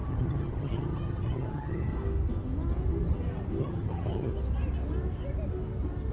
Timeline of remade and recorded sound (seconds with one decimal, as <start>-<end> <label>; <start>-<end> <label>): 0.0-1.9 remade; 1.9-3.6 recorded; 3.6-4.3 remade; 4.3-6.1 recorded